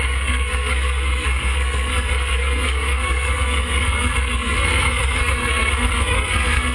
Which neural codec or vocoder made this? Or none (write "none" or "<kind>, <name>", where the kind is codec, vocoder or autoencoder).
codec, SNAC